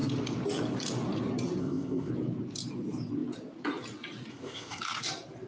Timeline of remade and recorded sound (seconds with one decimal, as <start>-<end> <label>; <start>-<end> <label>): 0.0-1.6 recorded; 1.6-2.1 remade; 2.1-4.3 recorded; 4.3-4.8 remade; 4.8-5.5 recorded